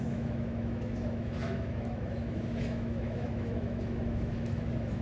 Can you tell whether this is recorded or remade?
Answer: remade